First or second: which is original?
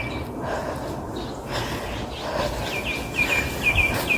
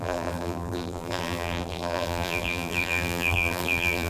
first